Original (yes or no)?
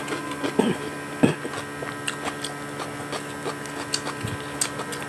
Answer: yes